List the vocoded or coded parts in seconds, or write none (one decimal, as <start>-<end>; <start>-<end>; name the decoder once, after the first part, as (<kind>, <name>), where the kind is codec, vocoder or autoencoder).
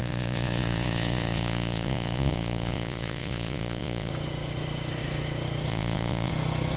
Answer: 0.0-4.1 (vocoder, Vocos); 5.7-6.3